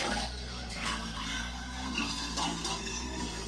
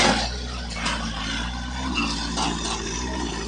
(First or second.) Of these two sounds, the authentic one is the second